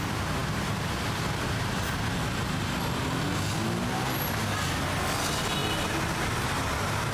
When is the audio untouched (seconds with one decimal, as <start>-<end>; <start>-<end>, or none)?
0.0-7.1